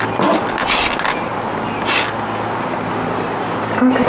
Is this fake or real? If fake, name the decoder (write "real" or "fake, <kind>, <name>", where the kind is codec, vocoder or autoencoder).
real